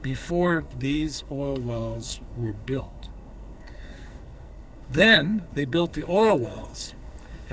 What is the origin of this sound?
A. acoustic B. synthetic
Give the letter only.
B